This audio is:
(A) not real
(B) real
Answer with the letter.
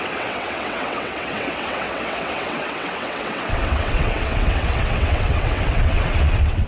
A